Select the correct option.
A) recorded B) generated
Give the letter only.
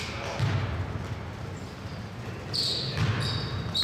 A